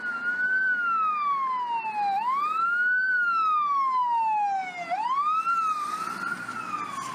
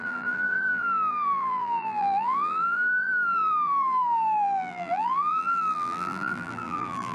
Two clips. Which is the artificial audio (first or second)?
second